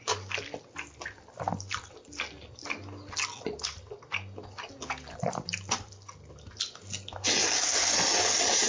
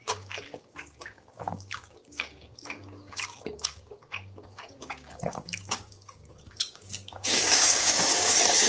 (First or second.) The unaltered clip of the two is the first